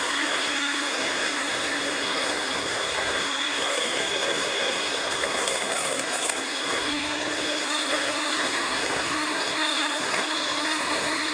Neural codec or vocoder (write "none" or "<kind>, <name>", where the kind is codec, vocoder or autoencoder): codec, SNAC